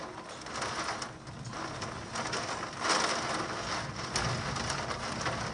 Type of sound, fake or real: real